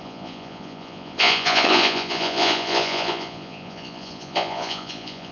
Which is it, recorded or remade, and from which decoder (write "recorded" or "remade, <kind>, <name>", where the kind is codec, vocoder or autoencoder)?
remade, vocoder, Vocos